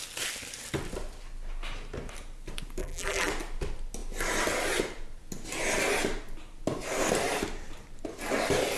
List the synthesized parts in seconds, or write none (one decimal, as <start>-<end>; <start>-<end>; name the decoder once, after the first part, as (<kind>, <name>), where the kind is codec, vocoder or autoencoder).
2.8-3.3 (vocoder, BigVGAN v2)